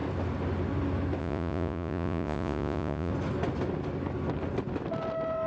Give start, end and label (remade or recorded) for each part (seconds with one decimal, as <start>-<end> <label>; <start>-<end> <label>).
0.0-1.2 recorded; 1.2-3.1 remade; 3.1-5.5 recorded